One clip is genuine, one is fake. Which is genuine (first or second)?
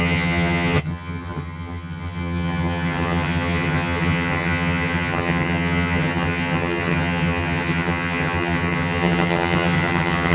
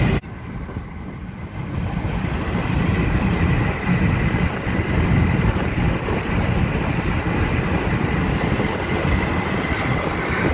second